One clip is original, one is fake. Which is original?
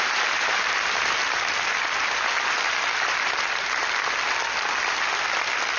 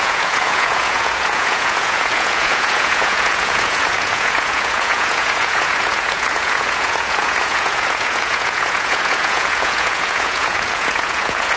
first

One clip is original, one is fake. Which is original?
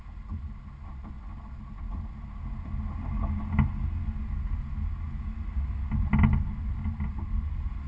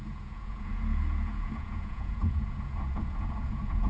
first